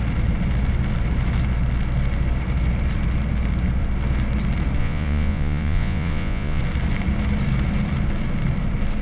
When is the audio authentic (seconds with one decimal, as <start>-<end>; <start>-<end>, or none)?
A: 0.0-4.8; 6.6-9.0